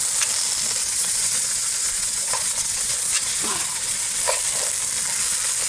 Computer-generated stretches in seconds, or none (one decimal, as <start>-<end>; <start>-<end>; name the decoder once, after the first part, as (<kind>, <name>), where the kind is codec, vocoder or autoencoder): 0.8-4.2 (vocoder, WaveNeXt)